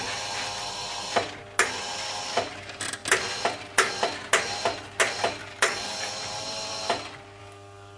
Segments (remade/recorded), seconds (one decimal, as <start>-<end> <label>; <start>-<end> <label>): 0.0-5.4 recorded; 5.4-6.1 remade; 6.1-7.4 recorded; 7.4-8.0 remade